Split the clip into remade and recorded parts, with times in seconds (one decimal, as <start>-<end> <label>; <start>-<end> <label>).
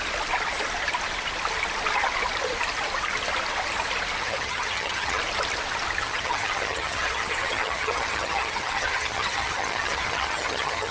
0.0-4.2 recorded; 4.2-5.2 remade; 5.2-6.0 recorded; 6.0-10.9 remade